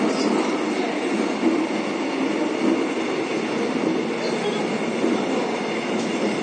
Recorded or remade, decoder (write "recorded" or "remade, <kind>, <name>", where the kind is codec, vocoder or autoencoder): recorded